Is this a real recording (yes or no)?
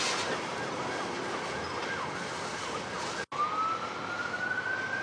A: yes